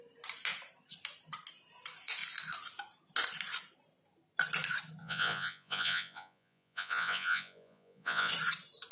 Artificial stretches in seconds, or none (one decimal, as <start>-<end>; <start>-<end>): 5.0-8.3